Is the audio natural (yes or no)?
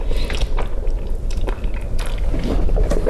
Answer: yes